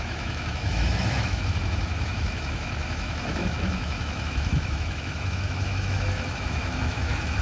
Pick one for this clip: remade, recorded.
remade